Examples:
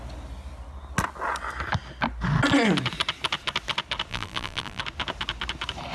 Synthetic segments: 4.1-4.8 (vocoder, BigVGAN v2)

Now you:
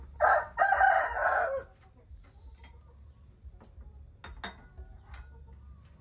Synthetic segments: 1.2-1.9 (vocoder, BigVGAN v2)

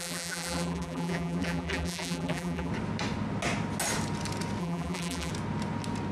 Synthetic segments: 0.0-2.7 (vocoder, BigVGAN v2); 4.6-5.3

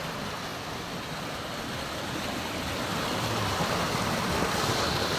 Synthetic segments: none